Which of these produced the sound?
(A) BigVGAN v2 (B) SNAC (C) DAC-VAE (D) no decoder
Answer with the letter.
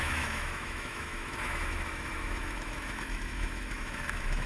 C